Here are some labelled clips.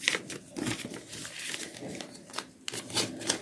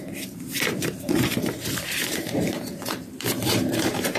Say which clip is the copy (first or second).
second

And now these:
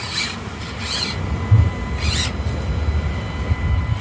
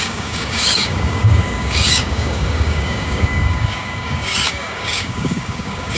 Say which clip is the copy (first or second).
second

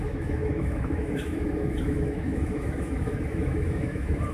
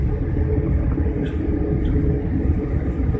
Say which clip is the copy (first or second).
first